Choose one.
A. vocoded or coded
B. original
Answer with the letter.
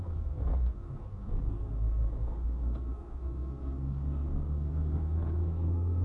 A